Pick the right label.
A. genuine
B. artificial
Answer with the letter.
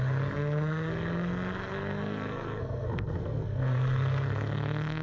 B